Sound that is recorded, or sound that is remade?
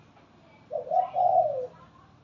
recorded